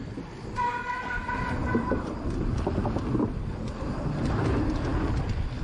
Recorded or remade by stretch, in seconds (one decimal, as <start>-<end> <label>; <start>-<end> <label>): 0.0-5.6 recorded